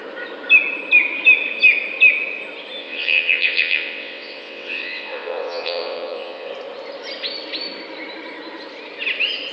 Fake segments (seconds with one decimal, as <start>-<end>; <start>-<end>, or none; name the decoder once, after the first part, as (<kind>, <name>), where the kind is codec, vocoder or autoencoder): 2.8-6.5 (vocoder, WaveNeXt)